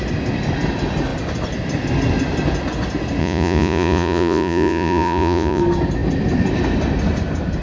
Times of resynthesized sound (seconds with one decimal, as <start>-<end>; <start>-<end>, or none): 3.2-5.6